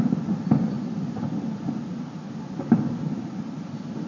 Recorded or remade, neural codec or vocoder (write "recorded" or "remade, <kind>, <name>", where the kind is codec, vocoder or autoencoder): recorded